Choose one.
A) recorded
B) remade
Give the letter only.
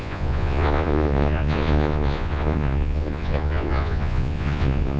B